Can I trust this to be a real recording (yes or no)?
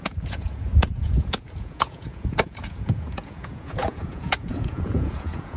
no